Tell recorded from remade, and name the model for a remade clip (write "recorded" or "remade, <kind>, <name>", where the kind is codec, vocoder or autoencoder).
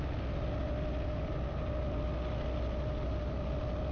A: recorded